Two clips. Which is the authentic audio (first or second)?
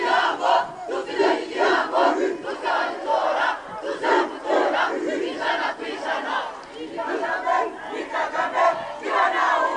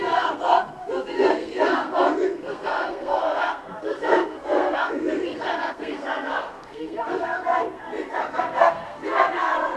first